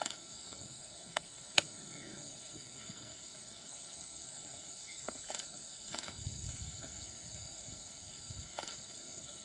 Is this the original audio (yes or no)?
no